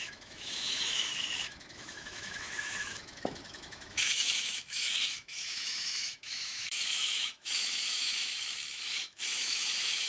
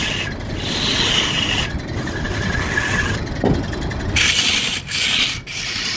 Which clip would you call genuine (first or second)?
second